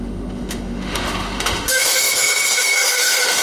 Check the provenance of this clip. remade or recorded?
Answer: remade